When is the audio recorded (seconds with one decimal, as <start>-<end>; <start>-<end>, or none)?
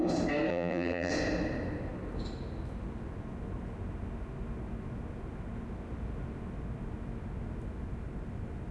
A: 0.0-0.5; 1.1-8.7